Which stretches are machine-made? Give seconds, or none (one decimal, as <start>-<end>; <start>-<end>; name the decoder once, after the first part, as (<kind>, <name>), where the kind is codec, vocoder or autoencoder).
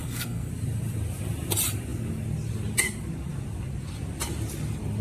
0.0-0.5 (codec, SNAC)